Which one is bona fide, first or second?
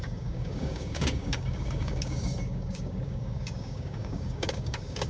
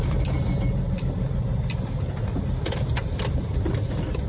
second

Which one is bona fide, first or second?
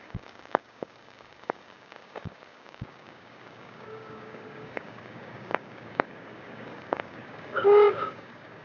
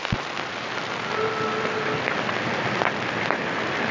second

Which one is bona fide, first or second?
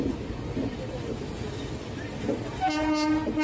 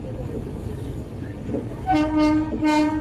first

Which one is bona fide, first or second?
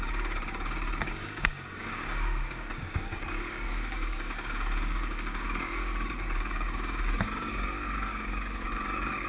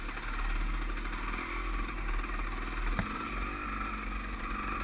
second